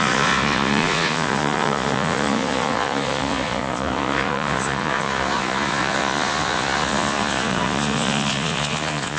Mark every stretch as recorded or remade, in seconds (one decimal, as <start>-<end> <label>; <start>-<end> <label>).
0.0-9.2 remade